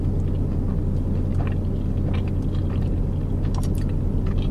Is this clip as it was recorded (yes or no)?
yes